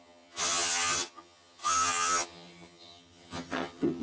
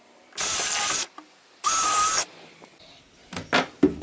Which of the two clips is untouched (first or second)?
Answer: second